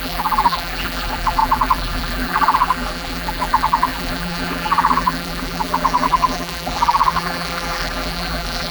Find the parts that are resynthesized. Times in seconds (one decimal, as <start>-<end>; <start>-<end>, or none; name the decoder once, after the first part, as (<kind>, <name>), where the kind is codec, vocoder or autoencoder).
0.0-8.7 (vocoder, BigVGAN v2)